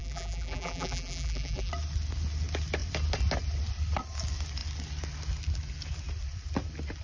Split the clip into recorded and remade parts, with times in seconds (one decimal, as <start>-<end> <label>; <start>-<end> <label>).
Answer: 0.0-1.7 remade; 1.7-7.0 recorded